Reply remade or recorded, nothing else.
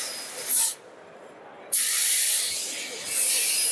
recorded